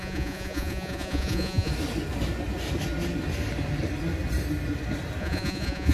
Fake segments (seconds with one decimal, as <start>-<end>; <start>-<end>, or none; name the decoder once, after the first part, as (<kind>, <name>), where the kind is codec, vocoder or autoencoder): 0.0-1.7 (vocoder, Vocos); 5.2-5.9